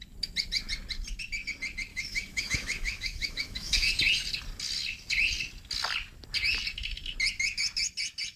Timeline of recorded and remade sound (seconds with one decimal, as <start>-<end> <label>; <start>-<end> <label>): 0.0-1.9 recorded; 1.9-3.9 remade; 3.9-8.4 recorded